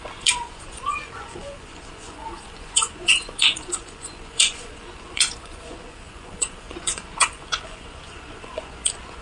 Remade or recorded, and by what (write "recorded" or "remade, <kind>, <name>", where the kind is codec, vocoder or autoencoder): remade, vocoder, Vocos